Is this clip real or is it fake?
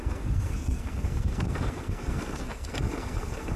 fake